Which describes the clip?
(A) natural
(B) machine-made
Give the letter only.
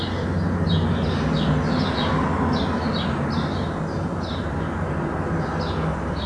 A